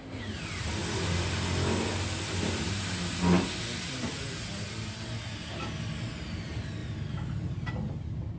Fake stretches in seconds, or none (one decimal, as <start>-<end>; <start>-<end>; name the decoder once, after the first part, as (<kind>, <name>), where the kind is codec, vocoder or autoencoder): none